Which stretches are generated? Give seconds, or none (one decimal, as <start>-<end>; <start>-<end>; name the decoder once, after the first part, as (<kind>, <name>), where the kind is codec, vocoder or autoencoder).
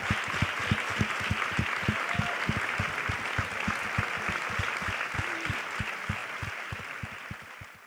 6.2-7.2 (vocoder, BigVGAN v2)